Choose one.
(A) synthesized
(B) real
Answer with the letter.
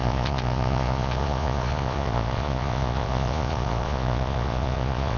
A